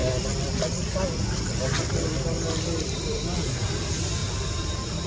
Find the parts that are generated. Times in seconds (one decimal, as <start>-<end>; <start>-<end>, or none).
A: none